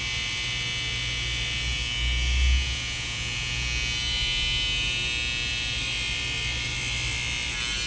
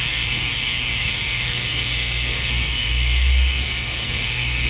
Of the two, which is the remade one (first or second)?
second